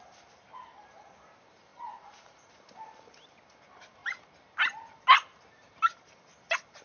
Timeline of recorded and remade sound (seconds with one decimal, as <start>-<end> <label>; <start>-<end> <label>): 0.0-1.7 recorded; 1.7-2.5 remade; 2.5-6.8 recorded